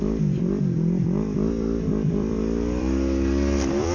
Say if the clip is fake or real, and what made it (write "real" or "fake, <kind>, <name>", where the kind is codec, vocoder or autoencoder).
fake, vocoder, BigVGAN v2